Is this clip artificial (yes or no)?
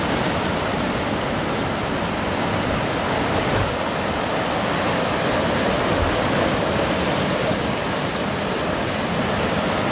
no